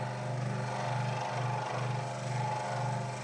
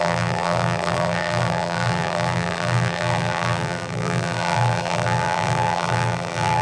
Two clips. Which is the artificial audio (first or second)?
second